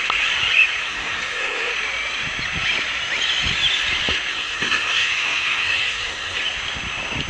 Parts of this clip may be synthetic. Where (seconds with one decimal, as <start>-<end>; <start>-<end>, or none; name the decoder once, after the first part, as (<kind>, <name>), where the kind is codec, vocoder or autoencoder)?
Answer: 0.8-1.7 (codec, SNAC); 4.3-6.4